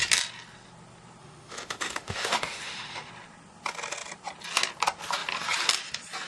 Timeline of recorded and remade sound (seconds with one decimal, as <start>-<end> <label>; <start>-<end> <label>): 0.0-1.2 recorded; 1.2-3.1 remade; 3.1-6.3 recorded